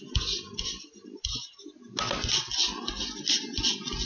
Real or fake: real